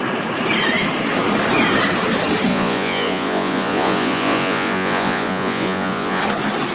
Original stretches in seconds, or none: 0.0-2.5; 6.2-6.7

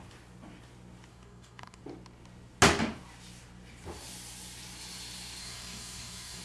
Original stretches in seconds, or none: 0.0-1.1; 1.8-5.4